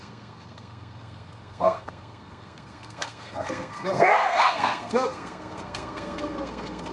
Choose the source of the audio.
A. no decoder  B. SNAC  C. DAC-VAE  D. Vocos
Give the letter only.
B